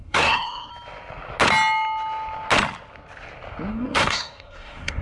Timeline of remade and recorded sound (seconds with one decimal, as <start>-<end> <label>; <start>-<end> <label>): 0.0-0.7 remade; 0.7-3.7 recorded; 3.7-5.0 remade